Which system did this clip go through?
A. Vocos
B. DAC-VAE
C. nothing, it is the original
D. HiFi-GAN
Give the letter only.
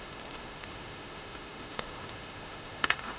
B